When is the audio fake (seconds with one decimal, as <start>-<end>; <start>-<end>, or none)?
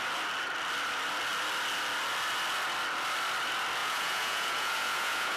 3.8-5.4